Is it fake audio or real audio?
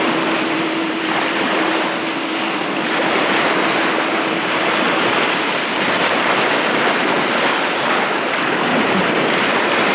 fake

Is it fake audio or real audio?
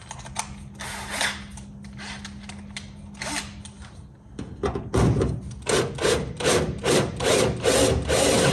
real